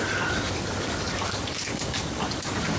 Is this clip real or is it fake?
fake